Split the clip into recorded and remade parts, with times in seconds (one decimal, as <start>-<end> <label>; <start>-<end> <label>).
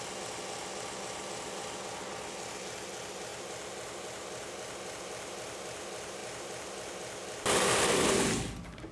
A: 0.0-8.9 recorded